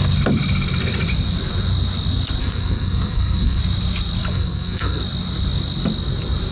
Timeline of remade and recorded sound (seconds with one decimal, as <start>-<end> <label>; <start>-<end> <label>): 0.0-2.4 recorded; 2.4-3.6 remade; 3.6-4.3 recorded; 4.3-5.0 remade; 5.0-6.5 recorded